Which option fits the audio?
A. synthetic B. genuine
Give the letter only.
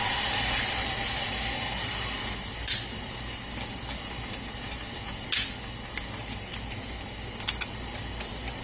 B